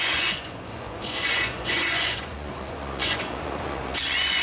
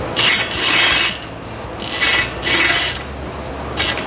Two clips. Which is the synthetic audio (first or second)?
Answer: first